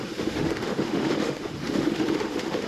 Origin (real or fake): fake